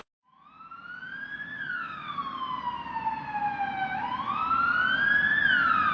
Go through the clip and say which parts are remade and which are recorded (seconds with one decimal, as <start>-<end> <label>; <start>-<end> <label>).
0.0-1.3 recorded; 1.3-2.2 remade; 2.2-5.9 recorded